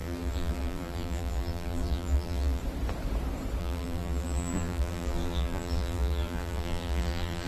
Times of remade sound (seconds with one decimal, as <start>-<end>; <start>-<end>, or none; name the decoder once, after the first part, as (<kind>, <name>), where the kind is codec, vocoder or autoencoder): 0.0-2.6 (vocoder, BigVGAN v2); 3.6-7.5